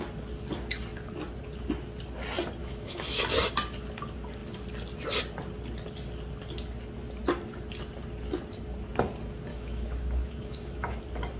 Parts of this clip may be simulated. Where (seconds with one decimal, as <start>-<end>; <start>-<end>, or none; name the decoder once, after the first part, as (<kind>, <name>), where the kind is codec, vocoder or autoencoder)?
2.6-3.2 (autoencoder, DAC-VAE); 9.5-11.0